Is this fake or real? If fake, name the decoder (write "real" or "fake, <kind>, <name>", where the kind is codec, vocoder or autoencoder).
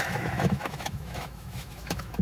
fake, autoencoder, DAC-VAE